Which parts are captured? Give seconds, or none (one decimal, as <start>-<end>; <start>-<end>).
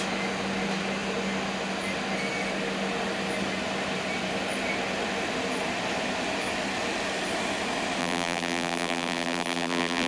0.0-8.0